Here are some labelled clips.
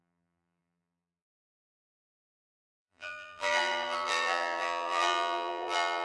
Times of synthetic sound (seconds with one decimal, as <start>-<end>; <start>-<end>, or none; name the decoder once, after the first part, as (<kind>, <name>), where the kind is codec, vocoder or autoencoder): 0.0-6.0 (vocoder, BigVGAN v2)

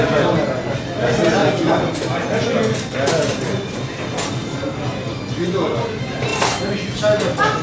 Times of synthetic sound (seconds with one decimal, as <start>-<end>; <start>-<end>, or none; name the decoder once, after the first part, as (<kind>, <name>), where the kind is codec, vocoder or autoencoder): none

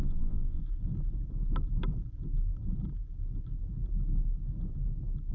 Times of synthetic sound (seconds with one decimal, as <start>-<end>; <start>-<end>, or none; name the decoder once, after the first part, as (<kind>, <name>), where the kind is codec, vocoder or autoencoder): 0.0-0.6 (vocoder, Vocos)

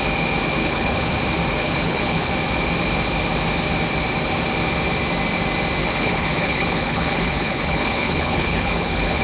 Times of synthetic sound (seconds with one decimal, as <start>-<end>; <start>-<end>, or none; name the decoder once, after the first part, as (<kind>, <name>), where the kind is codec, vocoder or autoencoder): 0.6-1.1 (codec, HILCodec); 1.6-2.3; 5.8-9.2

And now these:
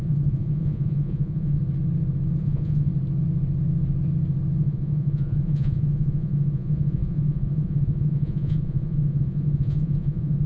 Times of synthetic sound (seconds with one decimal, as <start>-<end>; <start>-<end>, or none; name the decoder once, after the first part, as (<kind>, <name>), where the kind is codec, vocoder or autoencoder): 0.0-1.6 (vocoder, Vocos); 2.4-2.9; 4.6-10.5

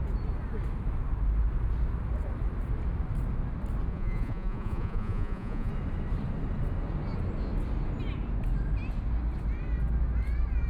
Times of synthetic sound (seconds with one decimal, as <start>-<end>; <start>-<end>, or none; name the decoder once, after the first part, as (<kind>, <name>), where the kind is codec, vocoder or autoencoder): 3.9-5.7 (vocoder, Vocos)

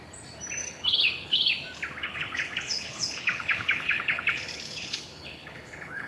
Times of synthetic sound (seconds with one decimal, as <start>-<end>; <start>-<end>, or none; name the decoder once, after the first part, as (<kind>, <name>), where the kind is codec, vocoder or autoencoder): 0.6-1.5 (codec, HILCodec); 2.0-6.1

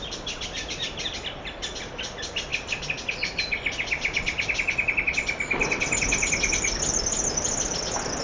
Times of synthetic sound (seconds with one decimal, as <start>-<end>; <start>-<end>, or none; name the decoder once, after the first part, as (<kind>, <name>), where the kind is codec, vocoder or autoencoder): 0.0-2.5 (vocoder, BigVGAN v2); 7.1-8.2